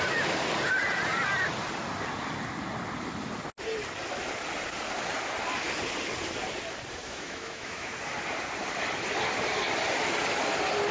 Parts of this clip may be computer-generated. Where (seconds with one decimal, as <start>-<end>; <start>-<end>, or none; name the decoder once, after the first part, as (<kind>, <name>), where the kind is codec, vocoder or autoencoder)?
7.0-7.9 (autoencoder, DAC-VAE)